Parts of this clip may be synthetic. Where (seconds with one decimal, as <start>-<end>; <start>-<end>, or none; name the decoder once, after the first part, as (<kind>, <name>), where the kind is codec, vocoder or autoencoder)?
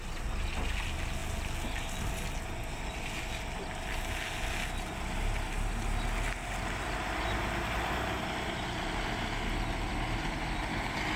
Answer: none